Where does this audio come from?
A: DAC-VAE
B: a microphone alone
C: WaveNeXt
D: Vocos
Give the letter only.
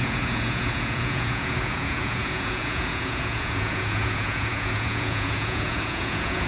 D